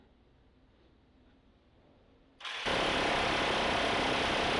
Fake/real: real